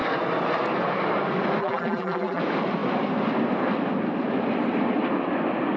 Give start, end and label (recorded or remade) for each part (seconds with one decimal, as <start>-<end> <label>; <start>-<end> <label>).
0.0-1.6 recorded; 1.6-2.4 remade; 2.4-5.8 recorded